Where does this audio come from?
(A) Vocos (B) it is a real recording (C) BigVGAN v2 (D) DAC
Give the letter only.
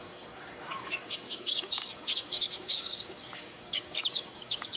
D